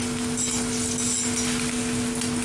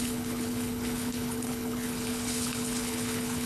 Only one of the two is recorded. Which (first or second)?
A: first